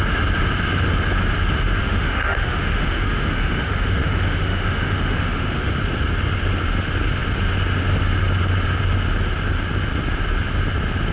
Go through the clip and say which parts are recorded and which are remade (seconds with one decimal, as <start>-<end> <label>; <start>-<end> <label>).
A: 0.0-1.8 recorded; 1.8-5.7 remade; 5.7-11.1 recorded